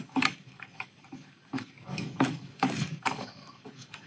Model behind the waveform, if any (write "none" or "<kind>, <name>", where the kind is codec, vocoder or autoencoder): codec, DAC